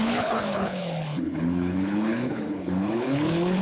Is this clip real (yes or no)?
no